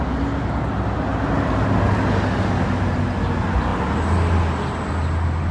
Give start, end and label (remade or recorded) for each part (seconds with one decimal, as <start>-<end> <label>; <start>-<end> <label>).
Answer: 0.0-5.5 recorded